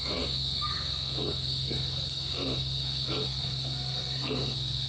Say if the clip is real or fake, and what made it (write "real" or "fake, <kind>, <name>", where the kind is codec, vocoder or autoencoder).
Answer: fake, codec, SNAC